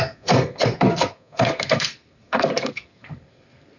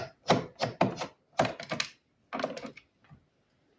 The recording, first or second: second